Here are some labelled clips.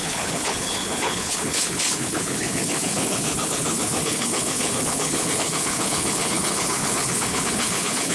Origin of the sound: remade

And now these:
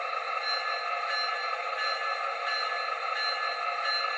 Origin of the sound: recorded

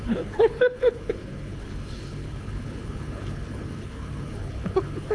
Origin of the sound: remade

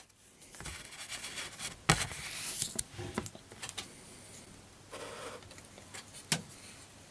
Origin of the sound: recorded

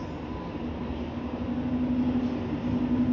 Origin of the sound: recorded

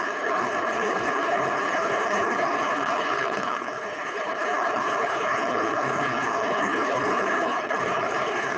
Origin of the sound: remade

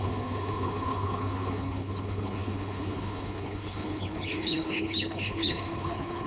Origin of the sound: remade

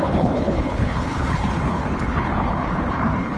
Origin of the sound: remade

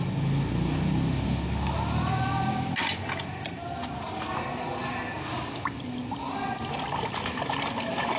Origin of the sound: recorded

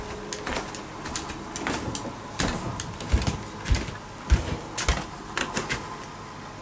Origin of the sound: recorded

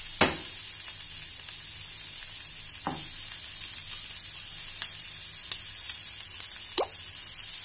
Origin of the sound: recorded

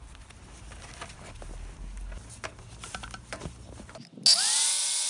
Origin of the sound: recorded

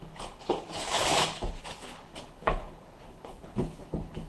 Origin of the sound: remade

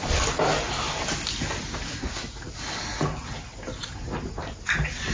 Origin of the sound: recorded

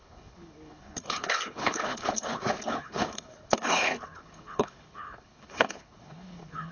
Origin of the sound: remade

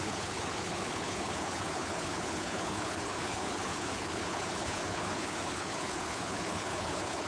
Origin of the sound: remade